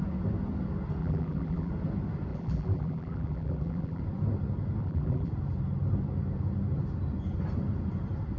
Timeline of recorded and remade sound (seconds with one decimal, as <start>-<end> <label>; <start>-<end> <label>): 0.0-1.0 recorded; 1.0-1.7 remade; 1.7-2.3 recorded; 2.3-4.0 remade; 4.0-4.8 recorded; 4.8-5.3 remade; 5.3-8.4 recorded